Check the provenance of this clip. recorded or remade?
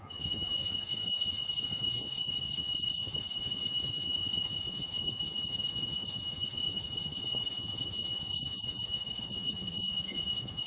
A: remade